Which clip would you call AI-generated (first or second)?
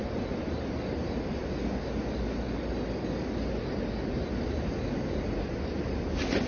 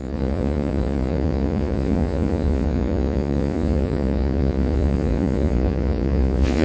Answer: second